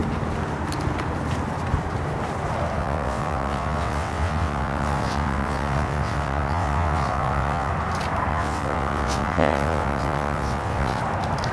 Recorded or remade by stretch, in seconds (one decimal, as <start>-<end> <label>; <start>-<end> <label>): 0.0-2.8 recorded; 2.8-7.7 remade; 7.7-8.3 recorded; 8.3-11.0 remade; 11.0-11.5 recorded